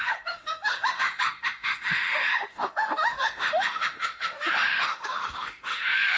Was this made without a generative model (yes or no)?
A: no